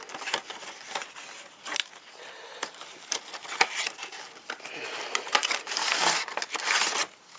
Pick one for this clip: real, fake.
real